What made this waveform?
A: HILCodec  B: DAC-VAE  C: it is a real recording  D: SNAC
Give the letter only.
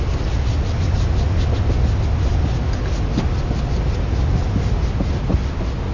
C